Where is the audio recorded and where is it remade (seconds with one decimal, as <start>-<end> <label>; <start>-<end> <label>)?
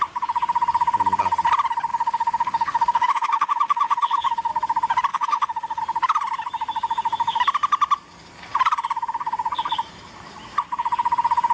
0.0-1.9 recorded; 1.9-4.5 remade; 4.5-5.1 recorded; 5.1-5.8 remade; 5.8-11.5 recorded